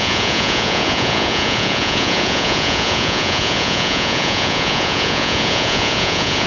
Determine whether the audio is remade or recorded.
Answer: remade